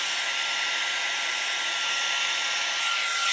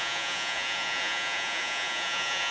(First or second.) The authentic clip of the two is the first